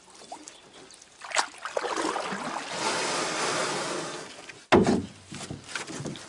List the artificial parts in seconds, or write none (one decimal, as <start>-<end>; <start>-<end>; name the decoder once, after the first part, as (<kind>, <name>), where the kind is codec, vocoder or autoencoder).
none